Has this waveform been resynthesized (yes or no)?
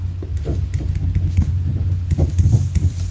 no